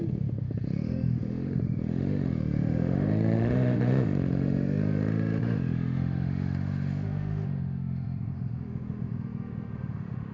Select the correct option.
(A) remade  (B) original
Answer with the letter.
A